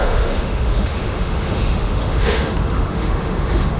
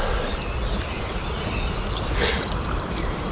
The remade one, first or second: first